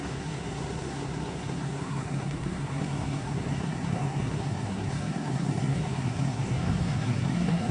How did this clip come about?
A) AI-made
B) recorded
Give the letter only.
A